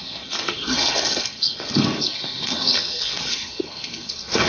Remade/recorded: remade